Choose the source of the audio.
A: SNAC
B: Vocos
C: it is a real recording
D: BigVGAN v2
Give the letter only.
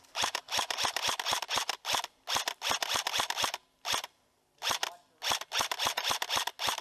C